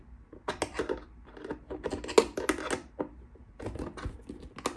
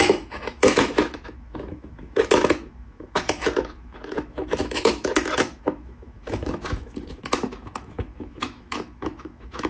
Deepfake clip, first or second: second